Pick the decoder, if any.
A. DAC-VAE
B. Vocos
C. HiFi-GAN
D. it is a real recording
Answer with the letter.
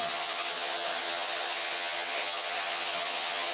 C